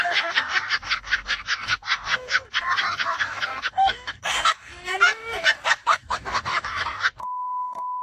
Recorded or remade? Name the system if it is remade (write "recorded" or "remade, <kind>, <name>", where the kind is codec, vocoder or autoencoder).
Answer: remade, codec, DAC